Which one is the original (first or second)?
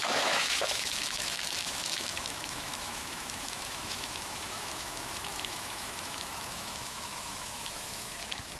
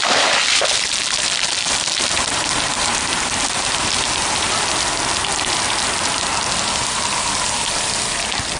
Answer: second